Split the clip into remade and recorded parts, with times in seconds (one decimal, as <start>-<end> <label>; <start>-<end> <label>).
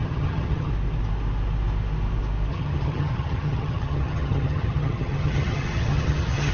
0.0-0.7 remade; 0.7-2.5 recorded; 2.5-6.5 remade